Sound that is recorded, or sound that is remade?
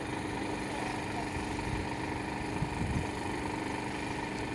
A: recorded